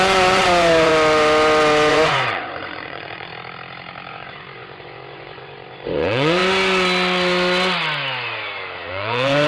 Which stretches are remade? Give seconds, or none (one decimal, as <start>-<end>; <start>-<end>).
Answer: 0.0-0.9; 1.9-3.3; 4.1-6.4; 8.9-9.5